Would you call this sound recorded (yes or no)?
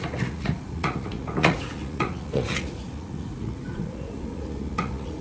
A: no